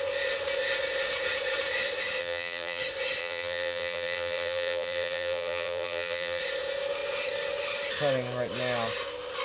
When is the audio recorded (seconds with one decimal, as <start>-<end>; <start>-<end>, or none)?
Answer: 0.0-2.2; 2.8-3.2; 6.4-9.4